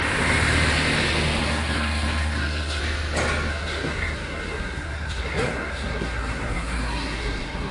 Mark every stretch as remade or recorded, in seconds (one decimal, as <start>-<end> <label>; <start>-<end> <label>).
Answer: 0.0-1.4 recorded; 1.4-2.8 remade; 2.8-3.5 recorded; 3.5-7.7 remade